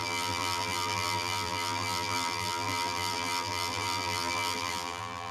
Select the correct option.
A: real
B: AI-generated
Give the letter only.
B